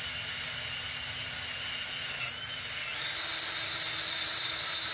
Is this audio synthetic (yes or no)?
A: no